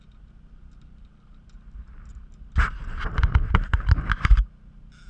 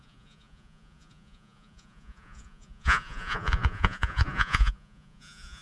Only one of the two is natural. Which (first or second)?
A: first